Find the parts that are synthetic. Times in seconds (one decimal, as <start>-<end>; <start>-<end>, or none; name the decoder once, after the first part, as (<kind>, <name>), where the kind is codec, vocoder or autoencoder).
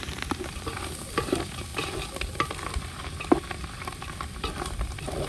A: 0.0-0.7 (vocoder, BigVGAN v2); 1.7-5.3